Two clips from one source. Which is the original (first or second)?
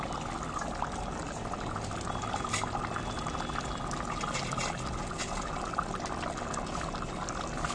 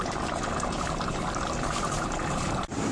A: first